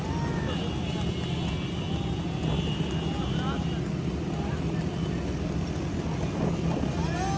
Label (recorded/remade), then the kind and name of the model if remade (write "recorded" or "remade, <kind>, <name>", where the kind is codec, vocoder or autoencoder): recorded